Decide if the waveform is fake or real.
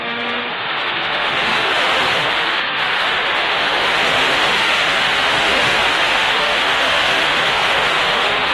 fake